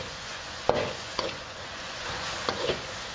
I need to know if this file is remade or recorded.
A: remade